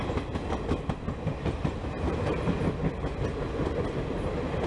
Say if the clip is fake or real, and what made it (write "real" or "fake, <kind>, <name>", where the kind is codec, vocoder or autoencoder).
real